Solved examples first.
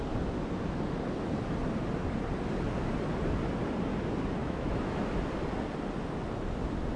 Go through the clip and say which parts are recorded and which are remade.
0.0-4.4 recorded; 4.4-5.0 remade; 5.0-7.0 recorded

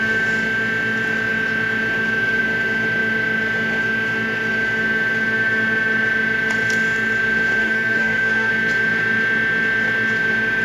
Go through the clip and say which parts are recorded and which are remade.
0.0-7.6 recorded; 7.6-8.5 remade; 8.5-10.6 recorded

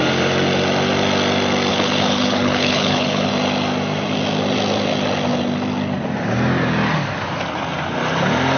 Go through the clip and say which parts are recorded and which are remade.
0.0-1.7 recorded; 1.7-3.3 remade; 3.3-8.6 recorded